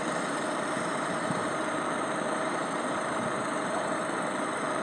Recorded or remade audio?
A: remade